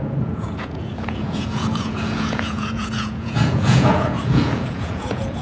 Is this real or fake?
fake